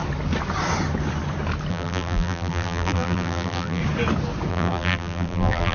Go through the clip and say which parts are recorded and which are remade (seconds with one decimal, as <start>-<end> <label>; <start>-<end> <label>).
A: 0.0-1.7 recorded; 1.7-3.8 remade; 3.8-4.5 recorded; 4.5-5.7 remade